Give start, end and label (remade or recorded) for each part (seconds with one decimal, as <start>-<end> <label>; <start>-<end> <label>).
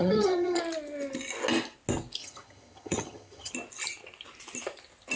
0.0-0.6 remade; 0.6-2.2 recorded; 2.2-3.5 remade; 3.5-5.2 recorded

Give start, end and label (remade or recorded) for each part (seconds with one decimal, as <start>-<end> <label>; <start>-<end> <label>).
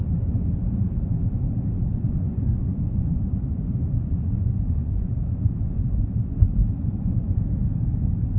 0.0-1.9 recorded; 1.9-6.0 remade; 6.0-6.8 recorded; 6.8-7.4 remade; 7.4-8.4 recorded